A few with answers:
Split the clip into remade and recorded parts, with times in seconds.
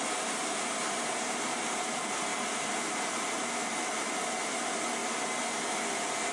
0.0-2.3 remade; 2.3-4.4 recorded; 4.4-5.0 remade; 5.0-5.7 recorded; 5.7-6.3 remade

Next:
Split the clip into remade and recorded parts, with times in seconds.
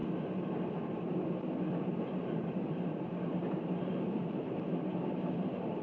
0.0-1.8 recorded; 1.8-5.8 remade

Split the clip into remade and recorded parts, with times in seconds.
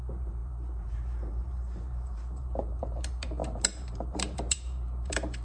0.0-5.4 remade